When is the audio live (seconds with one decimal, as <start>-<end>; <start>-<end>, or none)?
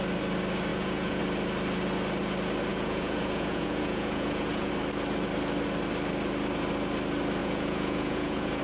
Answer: 0.0-0.7; 1.2-2.7; 4.7-7.4